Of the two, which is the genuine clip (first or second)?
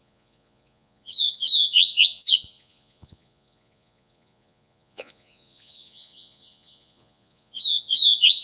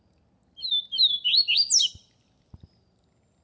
second